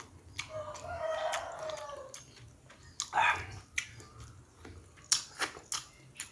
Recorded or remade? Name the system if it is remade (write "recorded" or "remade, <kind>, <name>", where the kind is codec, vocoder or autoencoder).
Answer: recorded